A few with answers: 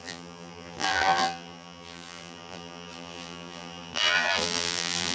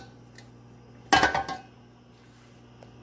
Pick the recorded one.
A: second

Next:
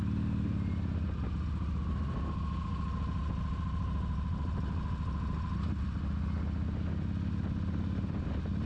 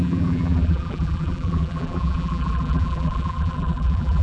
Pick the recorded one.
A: first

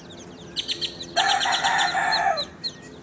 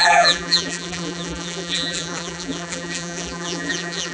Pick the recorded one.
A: first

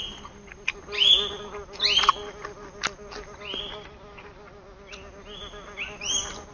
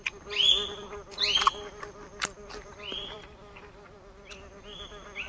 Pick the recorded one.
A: first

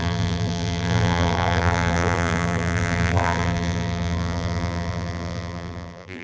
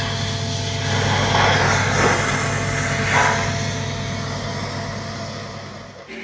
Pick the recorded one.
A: second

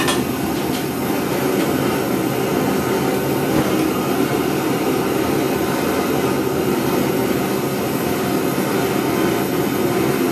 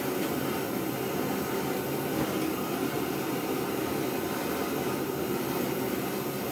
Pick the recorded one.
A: first